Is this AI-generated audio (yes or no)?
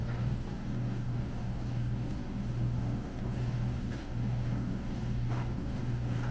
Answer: yes